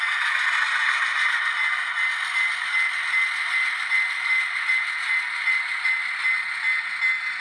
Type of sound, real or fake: real